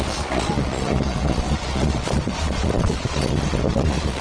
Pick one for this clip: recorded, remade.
remade